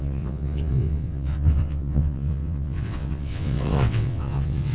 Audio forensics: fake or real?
fake